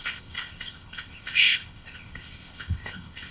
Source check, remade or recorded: remade